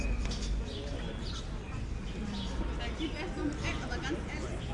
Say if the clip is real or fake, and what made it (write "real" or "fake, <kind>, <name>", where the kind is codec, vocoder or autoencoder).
real